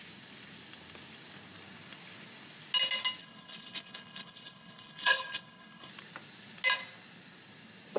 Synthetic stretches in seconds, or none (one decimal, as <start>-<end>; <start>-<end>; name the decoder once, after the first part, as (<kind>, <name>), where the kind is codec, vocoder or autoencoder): 3.2-5.9 (codec, HILCodec)